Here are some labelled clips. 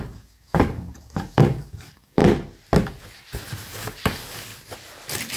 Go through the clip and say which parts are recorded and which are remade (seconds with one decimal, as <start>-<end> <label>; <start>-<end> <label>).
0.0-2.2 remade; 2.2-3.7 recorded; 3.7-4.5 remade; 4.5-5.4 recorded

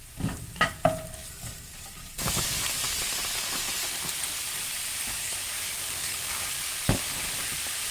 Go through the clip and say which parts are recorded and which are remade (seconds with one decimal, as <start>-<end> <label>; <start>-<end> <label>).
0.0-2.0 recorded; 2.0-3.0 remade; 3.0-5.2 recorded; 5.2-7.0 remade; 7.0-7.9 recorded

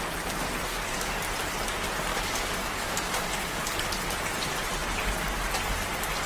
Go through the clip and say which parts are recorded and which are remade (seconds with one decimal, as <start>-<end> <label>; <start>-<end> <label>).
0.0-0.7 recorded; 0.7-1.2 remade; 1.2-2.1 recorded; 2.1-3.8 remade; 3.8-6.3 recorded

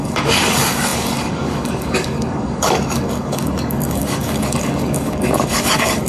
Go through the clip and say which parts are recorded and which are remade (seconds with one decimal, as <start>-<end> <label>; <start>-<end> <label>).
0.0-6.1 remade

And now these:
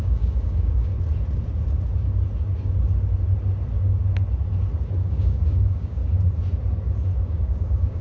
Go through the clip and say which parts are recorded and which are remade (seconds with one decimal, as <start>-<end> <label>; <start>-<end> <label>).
0.0-0.9 remade; 0.9-5.1 recorded; 5.1-6.0 remade; 6.0-7.2 recorded; 7.2-8.0 remade

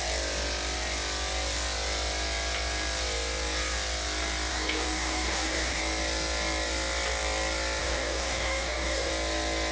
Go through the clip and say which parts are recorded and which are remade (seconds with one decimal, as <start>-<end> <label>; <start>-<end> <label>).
0.0-4.5 recorded; 4.5-5.8 remade; 5.8-7.8 recorded; 7.8-9.1 remade; 9.1-9.7 recorded

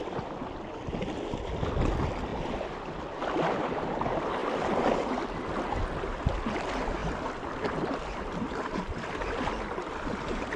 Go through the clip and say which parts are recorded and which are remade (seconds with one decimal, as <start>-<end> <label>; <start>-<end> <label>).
0.0-10.6 recorded